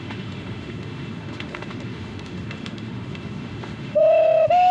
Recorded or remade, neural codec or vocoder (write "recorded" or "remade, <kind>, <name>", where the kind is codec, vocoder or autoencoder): remade, autoencoder, DAC-VAE